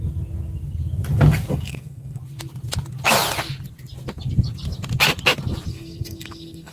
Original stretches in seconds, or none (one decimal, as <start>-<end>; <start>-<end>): 0.0-1.5; 2.2-5.7